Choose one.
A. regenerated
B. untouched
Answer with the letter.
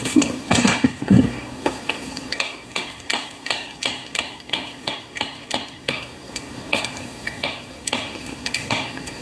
A